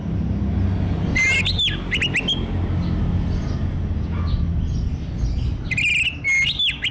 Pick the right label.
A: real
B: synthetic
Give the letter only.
A